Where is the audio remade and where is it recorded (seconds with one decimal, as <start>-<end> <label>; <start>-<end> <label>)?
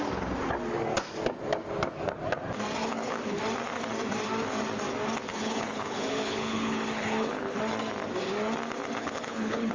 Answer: 0.0-2.8 recorded; 2.8-3.4 remade; 3.4-5.3 recorded; 5.3-7.6 remade; 7.6-9.0 recorded; 9.0-9.7 remade